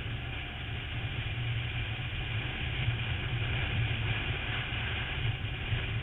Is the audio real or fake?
real